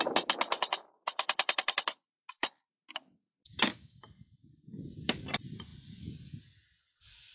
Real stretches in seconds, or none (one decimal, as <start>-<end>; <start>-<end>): 0.0-7.3